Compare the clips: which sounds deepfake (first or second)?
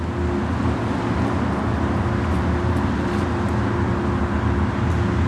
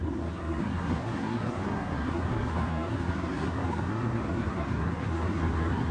second